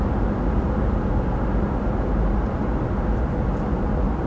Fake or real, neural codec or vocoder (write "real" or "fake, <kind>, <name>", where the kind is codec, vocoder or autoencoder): real